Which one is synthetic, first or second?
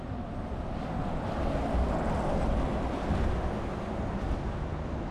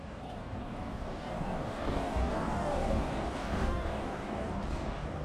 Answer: second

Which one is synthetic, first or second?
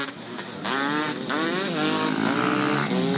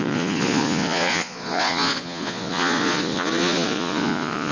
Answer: second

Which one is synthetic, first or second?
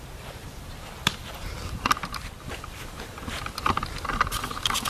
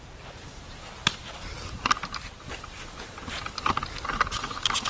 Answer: first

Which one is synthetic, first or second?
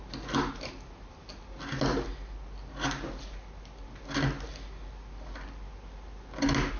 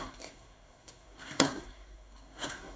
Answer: second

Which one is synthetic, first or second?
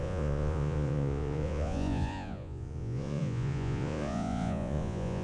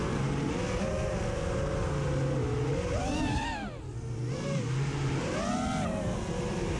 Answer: first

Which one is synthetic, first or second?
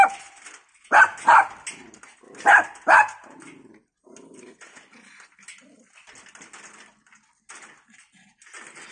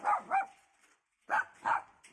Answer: second